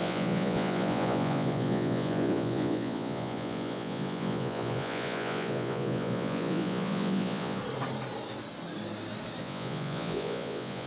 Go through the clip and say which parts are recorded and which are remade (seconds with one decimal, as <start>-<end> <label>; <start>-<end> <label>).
0.0-7.6 remade; 7.6-9.4 recorded; 9.4-10.9 remade